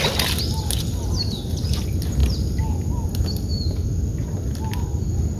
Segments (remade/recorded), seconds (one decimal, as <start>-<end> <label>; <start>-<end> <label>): 0.0-5.4 recorded